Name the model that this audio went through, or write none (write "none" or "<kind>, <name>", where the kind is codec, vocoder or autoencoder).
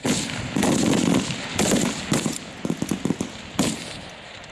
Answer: none